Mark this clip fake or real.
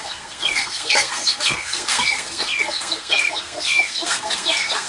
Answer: fake